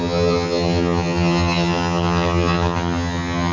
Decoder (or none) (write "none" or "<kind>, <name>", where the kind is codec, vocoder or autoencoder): vocoder, HiFi-GAN